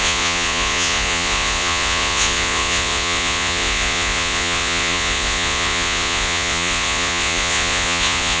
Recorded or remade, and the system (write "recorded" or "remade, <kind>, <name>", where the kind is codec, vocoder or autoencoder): remade, vocoder, Vocos